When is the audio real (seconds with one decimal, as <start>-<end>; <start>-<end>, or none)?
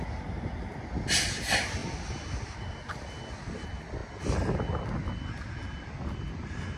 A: 0.0-6.8